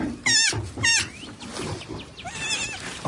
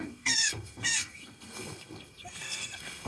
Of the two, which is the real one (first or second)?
first